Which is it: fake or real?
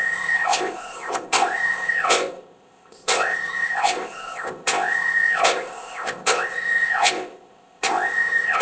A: fake